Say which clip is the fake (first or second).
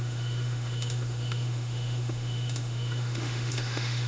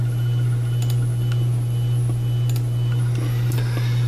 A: first